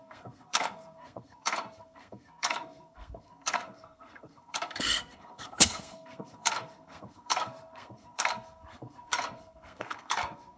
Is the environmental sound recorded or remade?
remade